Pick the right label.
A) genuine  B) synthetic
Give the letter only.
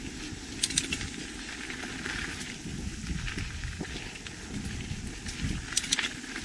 A